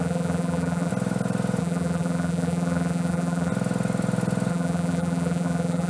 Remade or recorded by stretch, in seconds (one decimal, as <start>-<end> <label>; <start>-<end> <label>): 0.0-0.9 remade; 0.9-1.6 recorded; 1.6-3.5 remade; 3.5-4.5 recorded; 4.5-5.9 remade